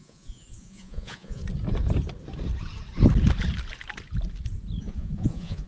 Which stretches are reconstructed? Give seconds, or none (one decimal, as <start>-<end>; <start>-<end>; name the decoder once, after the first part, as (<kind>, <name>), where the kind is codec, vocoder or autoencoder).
0.0-1.4 (vocoder, Vocos); 4.8-5.7